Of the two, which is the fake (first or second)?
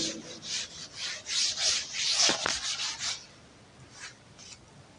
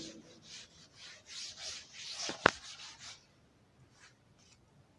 first